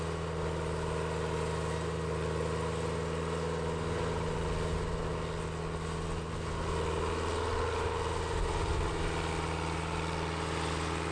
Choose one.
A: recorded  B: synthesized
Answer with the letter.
A